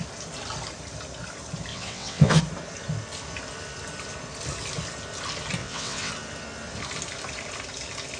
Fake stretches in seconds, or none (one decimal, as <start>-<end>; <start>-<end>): 1.7-2.4; 5.6-6.1